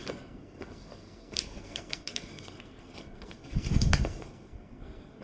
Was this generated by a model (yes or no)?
yes